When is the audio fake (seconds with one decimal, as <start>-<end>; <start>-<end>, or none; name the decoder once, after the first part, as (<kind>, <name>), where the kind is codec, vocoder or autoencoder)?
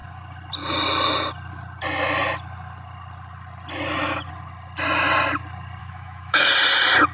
5.8-6.5 (autoencoder, DAC-VAE)